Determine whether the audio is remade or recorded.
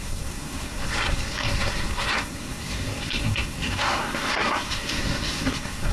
remade